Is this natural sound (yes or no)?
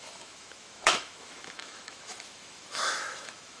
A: no